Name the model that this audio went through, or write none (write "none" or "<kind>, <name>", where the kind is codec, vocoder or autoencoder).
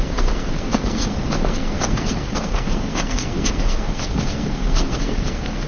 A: codec, SNAC